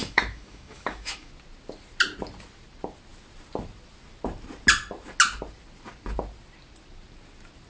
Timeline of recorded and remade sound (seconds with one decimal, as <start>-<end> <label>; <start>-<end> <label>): 0.0-1.3 remade; 1.3-7.7 recorded